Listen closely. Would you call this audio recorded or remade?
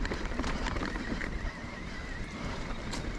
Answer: remade